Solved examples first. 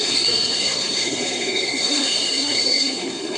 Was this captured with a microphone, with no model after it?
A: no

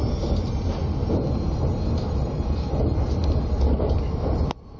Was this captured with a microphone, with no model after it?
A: yes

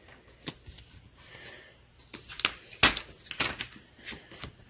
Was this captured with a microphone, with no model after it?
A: yes